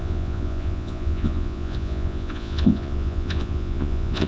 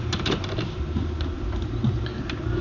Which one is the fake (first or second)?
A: first